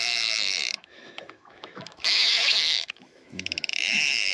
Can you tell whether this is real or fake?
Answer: fake